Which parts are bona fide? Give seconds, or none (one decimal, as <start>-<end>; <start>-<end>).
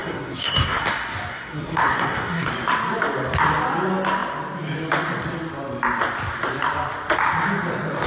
0.8-1.3; 2.5-8.1